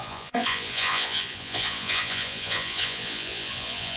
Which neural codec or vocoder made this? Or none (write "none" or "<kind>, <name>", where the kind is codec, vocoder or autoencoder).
vocoder, Vocos